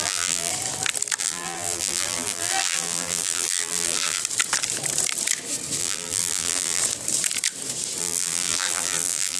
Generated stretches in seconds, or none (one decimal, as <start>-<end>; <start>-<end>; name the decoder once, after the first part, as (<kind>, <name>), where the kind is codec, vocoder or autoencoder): 0.0-0.5 (vocoder, BigVGAN v2); 1.2-4.2; 5.8-6.8; 8.0-9.4